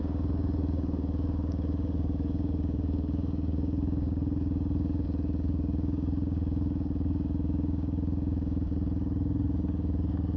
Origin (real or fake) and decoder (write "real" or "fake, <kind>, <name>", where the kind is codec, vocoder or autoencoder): fake, codec, DAC